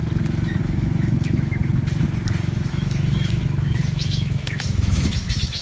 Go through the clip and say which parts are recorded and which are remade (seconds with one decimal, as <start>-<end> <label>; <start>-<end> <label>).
0.0-0.6 recorded; 0.6-1.6 remade; 1.6-2.7 recorded; 2.7-5.6 remade